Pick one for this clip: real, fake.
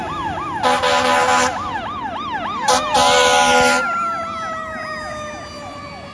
real